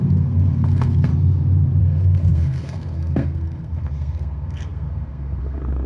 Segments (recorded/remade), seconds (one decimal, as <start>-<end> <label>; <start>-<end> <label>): 0.0-1.1 remade; 1.1-1.8 recorded; 1.8-5.9 remade